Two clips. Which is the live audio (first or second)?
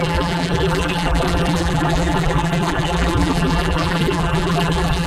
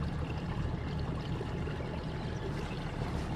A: second